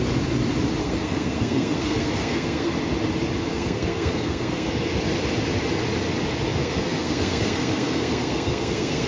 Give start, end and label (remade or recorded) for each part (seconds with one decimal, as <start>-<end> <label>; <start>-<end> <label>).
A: 0.0-0.8 recorded; 0.8-2.7 remade; 2.7-3.5 recorded; 3.5-4.7 remade; 4.7-6.6 recorded; 6.6-9.1 remade